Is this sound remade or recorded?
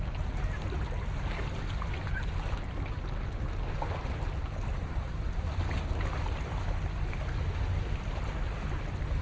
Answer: recorded